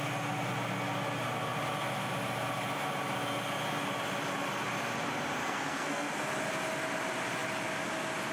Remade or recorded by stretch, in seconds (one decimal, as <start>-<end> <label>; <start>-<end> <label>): 0.0-5.4 recorded; 5.4-6.1 remade; 6.1-8.3 recorded